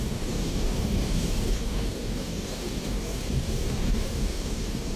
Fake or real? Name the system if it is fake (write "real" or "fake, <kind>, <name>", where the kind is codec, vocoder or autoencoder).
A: fake, codec, DAC